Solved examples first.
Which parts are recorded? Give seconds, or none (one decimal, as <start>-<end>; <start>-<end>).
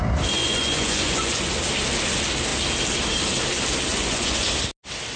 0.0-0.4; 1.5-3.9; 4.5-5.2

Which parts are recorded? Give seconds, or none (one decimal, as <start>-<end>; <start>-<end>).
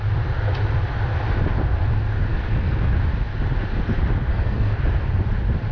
0.0-2.3; 2.9-4.3; 4.8-5.7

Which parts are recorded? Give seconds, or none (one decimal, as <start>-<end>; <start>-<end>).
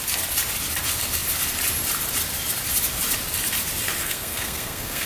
0.0-4.0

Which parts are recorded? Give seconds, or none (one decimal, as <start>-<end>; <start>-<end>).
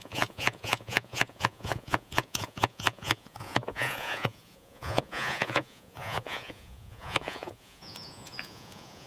none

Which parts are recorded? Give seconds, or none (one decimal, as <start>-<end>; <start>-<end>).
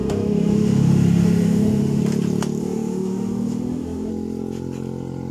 2.0-2.6; 4.1-5.3